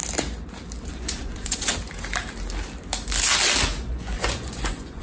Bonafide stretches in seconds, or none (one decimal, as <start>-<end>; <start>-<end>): 0.0-0.9; 1.7-3.8